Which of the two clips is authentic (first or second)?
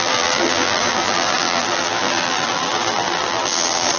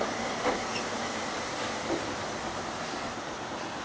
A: second